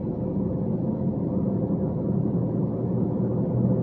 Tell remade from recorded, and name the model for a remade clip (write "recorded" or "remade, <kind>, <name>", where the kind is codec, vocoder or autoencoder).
recorded